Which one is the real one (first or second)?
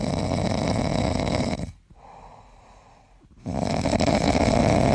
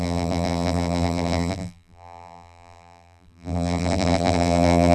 first